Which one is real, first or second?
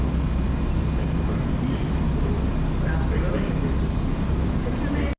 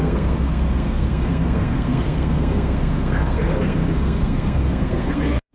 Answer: first